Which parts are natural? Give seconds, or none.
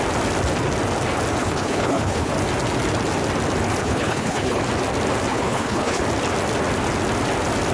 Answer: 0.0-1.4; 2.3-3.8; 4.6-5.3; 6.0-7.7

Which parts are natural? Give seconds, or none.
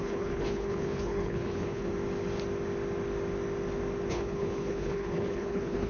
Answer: 1.9-4.1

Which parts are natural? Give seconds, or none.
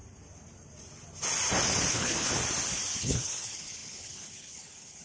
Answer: 0.0-1.9; 2.3-3.0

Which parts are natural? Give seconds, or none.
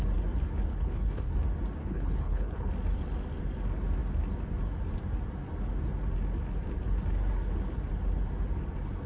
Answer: 0.0-0.7; 1.3-1.8; 2.7-9.1